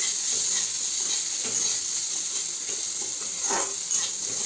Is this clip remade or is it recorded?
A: recorded